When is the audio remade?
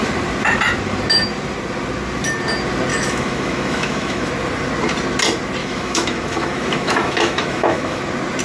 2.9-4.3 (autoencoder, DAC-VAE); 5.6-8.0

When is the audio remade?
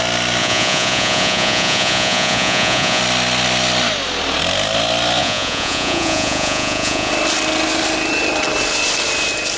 0.4-3.0 (vocoder, Vocos); 5.2-7.1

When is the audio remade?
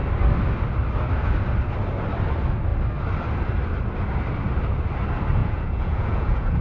5.4-6.6 (vocoder, Vocos)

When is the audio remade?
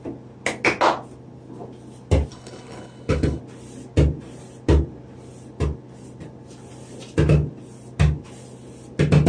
2.3-3.4 (codec, HILCodec)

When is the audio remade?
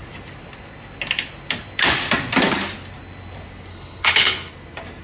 3.7-4.5 (codec, HILCodec)